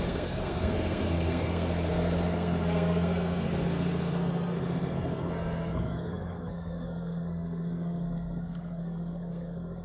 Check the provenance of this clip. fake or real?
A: fake